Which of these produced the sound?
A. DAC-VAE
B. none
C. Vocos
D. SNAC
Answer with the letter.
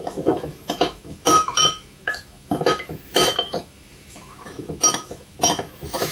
A